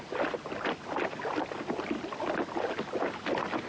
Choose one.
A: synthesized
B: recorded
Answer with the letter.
B